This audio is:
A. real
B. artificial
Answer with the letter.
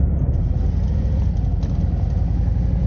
A